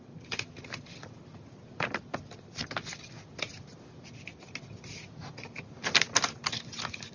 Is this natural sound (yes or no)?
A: yes